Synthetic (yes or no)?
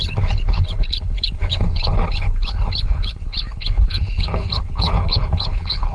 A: yes